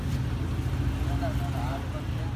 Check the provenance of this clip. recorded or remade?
recorded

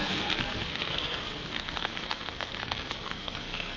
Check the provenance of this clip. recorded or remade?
remade